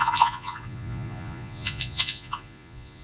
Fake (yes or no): yes